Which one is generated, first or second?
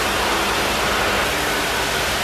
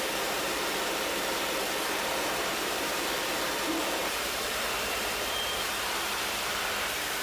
second